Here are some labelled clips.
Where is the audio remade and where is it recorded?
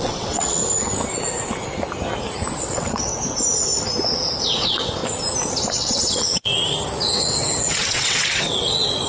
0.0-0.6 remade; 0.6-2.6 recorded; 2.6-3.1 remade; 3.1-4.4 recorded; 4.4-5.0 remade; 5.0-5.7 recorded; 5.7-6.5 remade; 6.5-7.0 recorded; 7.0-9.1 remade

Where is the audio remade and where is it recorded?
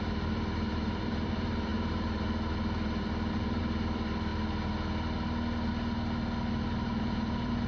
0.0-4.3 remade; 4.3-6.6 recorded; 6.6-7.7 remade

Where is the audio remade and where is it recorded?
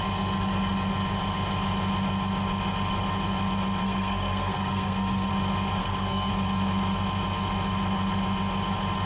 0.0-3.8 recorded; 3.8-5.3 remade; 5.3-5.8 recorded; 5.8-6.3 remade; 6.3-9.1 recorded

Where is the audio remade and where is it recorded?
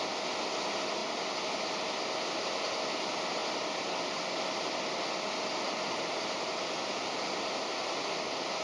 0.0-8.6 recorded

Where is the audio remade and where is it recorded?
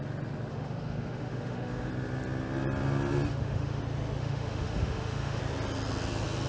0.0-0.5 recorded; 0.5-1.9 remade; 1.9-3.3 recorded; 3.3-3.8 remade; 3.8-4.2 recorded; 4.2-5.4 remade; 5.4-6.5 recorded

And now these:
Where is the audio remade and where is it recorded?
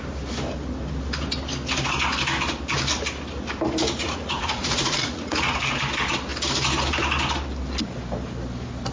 0.0-4.0 recorded; 4.0-5.6 remade; 5.6-8.9 recorded